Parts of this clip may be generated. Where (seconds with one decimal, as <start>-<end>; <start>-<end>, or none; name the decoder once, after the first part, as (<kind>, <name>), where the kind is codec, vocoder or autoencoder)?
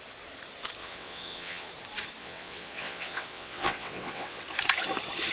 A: 0.8-1.7 (vocoder, WaveNeXt); 2.2-4.4